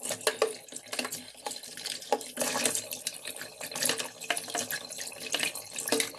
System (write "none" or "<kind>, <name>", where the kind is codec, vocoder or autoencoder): none